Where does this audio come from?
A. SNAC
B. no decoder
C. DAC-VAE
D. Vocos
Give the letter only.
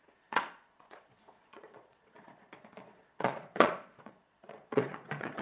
D